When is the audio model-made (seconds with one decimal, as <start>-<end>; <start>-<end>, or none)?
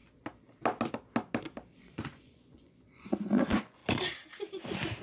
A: 1.8-3.8